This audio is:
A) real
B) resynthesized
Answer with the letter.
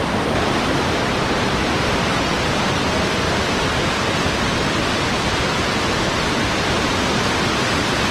A